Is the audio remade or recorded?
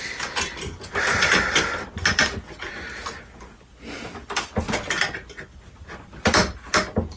recorded